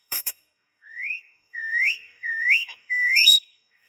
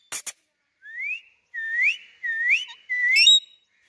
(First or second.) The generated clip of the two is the first